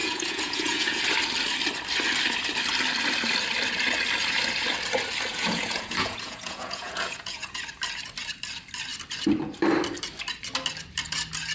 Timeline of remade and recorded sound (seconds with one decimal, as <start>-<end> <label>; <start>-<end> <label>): 0.0-1.0 remade; 1.0-5.3 recorded; 5.3-7.6 remade; 7.6-11.5 recorded